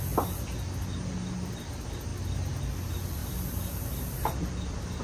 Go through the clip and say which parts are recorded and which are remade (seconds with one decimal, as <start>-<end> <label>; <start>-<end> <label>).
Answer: 0.0-5.0 recorded